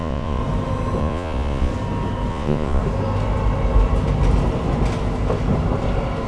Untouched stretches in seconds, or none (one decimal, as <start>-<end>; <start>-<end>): 0.4-1.0; 1.7-2.3; 2.8-6.3